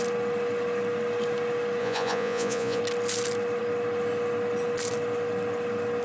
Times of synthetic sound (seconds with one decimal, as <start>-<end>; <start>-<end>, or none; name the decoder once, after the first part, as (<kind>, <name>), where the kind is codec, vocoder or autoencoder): 1.8-2.8 (vocoder, Vocos)